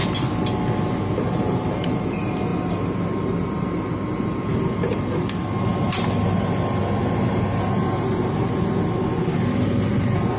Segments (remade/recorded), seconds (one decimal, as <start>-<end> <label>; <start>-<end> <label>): 0.0-10.4 recorded